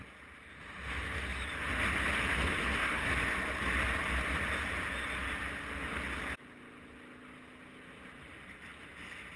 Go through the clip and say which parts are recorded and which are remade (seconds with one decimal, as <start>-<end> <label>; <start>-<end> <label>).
0.0-2.6 recorded; 2.6-3.1 remade; 3.1-9.4 recorded